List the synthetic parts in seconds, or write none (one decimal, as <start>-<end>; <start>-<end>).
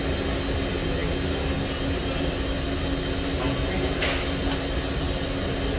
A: none